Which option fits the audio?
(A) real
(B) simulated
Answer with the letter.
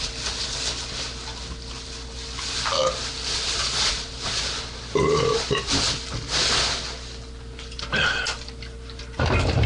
A